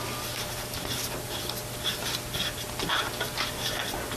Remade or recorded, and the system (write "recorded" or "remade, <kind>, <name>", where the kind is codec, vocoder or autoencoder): recorded